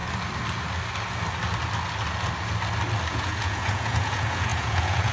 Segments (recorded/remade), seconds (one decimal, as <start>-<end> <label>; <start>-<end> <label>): 0.0-3.1 recorded; 3.1-5.1 remade